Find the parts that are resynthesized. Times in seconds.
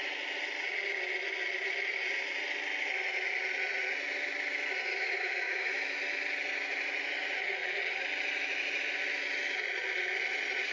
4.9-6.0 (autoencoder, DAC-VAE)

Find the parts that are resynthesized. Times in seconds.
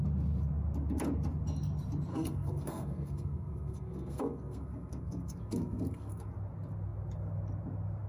2.1-6.3 (codec, SNAC)